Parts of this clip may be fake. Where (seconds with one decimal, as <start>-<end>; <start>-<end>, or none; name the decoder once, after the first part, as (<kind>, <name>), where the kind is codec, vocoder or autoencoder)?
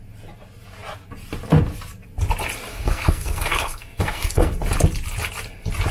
2.7-4.5 (codec, SNAC)